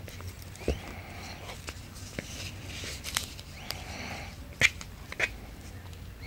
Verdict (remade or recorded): recorded